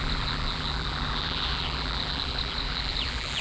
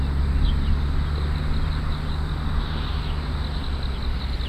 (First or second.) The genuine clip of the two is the second